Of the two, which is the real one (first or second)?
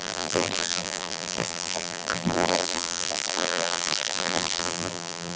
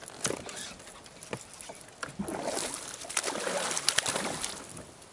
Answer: second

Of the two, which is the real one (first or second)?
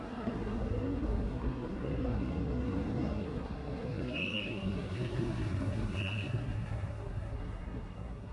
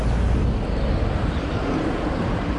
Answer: second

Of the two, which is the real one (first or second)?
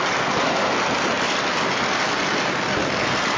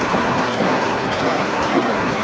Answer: first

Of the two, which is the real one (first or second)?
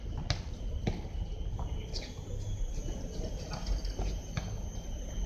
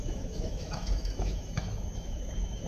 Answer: first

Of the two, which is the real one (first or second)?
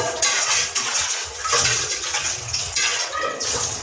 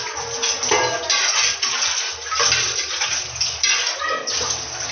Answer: second